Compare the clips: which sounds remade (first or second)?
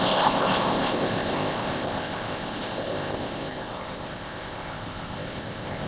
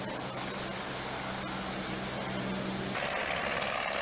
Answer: first